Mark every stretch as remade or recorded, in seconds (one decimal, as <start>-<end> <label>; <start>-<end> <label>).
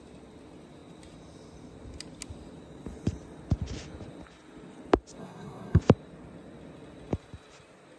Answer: 0.0-5.2 recorded; 5.2-5.8 remade; 5.8-8.0 recorded